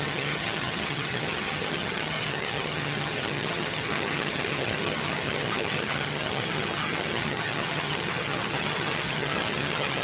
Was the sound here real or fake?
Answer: fake